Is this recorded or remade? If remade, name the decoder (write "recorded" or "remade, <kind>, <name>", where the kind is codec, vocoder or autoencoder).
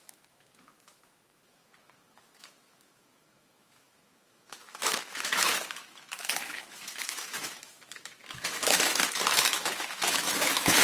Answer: remade, autoencoder, DAC-VAE